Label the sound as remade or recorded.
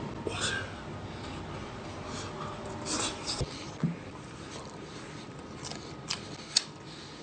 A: recorded